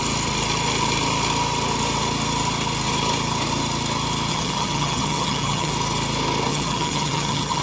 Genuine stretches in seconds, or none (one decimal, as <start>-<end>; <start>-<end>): 0.0-4.3; 5.7-6.5